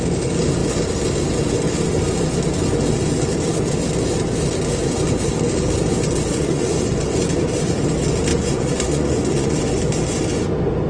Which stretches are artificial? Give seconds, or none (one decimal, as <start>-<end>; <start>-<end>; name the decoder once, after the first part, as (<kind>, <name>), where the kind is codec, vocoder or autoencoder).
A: 6.3-7.2 (vocoder, Vocos); 8.3-9.6